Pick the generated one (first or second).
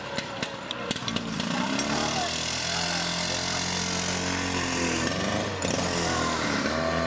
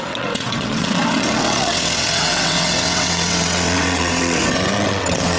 second